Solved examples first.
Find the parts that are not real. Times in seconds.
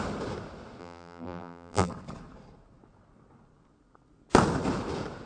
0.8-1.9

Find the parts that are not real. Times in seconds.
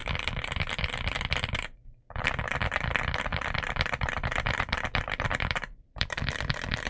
0.0-2.2; 3.3-6.2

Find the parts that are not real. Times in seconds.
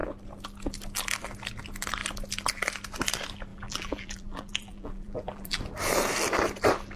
3.5-5.6